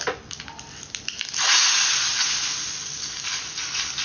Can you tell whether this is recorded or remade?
recorded